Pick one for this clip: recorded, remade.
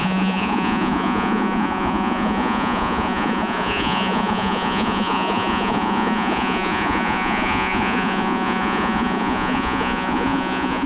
remade